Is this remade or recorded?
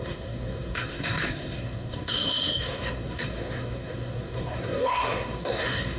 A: remade